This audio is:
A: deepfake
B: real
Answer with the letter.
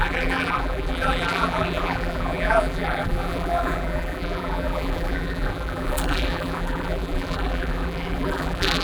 A